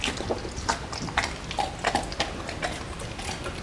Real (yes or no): yes